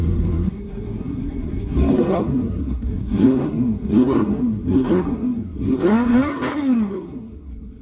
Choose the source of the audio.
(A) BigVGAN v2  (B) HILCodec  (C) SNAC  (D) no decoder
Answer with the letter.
C